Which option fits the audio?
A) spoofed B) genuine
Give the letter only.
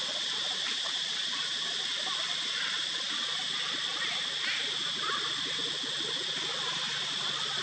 B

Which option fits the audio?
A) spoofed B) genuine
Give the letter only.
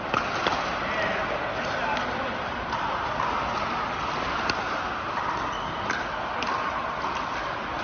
B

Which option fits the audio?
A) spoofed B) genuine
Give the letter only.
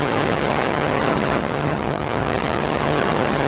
A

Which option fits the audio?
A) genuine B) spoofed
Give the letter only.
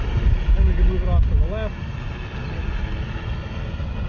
A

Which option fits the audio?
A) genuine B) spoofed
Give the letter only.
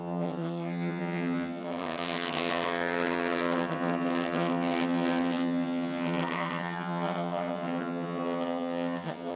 B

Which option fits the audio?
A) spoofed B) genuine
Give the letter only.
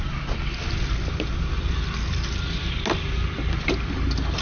B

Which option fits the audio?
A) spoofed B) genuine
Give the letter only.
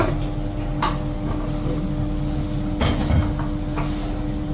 B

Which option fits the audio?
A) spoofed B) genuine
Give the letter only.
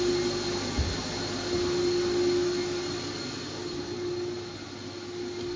B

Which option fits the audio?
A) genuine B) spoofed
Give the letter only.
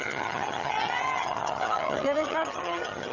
B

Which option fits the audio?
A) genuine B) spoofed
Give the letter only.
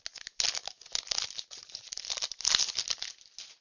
A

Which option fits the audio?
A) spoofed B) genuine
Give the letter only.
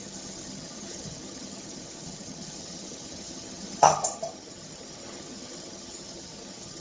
A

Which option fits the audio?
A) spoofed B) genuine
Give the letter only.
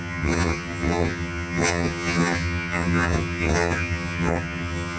A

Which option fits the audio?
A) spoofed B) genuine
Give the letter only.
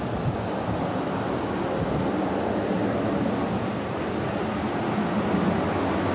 B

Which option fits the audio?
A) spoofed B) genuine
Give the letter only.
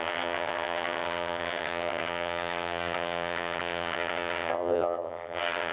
A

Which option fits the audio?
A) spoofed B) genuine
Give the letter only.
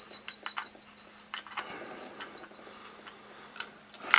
B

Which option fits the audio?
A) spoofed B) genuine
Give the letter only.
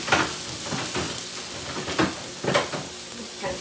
B